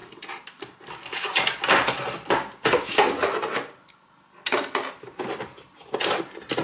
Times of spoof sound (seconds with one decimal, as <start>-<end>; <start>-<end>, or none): 0.0-0.8